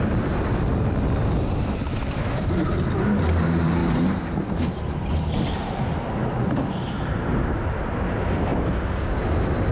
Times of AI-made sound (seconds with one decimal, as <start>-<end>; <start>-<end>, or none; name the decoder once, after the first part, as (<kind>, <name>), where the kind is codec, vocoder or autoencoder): 3.8-5.1 (vocoder, BigVGAN v2); 6.2-7.8